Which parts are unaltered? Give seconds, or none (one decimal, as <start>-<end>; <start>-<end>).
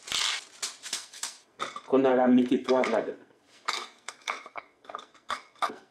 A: 0.0-0.9; 1.6-2.1